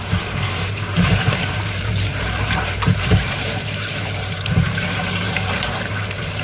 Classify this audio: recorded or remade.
remade